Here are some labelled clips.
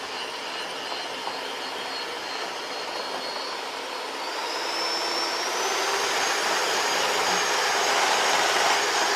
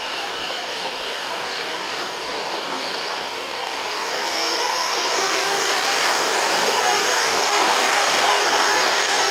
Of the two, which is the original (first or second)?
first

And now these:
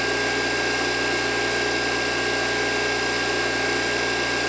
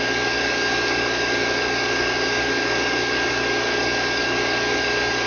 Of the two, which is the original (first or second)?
first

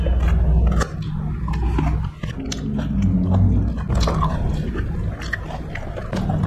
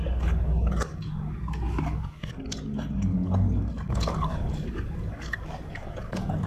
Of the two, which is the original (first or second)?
first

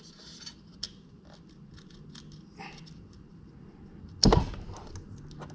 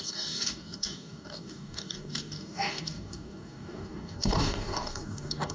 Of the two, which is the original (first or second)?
first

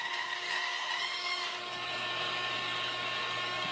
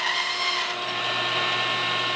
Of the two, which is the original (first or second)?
second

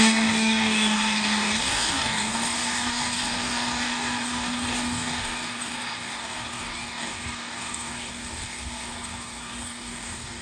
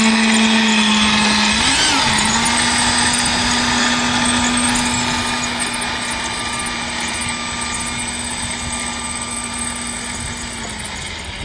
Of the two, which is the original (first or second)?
second